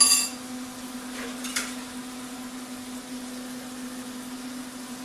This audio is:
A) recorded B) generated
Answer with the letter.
A